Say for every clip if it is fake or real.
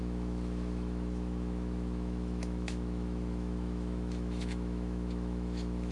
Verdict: fake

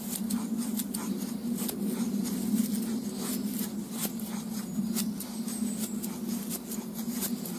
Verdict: real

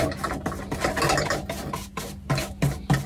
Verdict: real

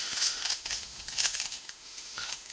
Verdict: fake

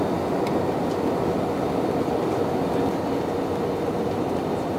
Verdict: real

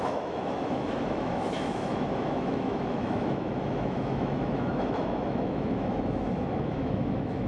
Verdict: fake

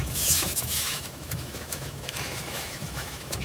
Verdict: fake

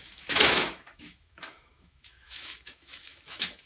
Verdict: fake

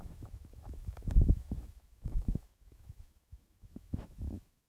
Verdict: fake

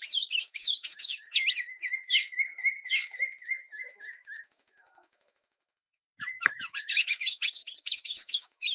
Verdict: fake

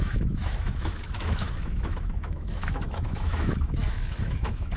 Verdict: fake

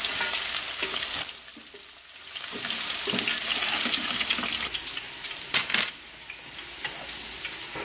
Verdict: real